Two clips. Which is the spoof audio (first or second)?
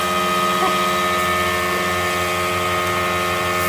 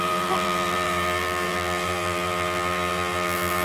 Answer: second